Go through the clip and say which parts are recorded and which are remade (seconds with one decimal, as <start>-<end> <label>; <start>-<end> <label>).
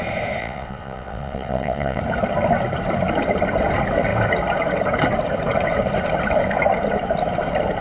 0.0-0.4 recorded; 0.4-2.0 remade; 2.0-7.8 recorded